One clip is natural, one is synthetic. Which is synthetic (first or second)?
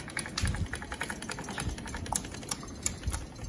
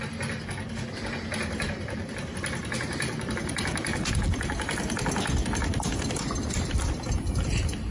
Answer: second